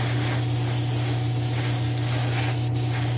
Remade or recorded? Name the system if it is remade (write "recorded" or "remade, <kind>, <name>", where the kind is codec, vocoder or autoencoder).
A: recorded